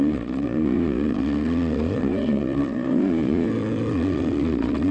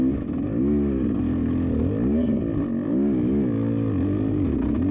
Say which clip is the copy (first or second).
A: first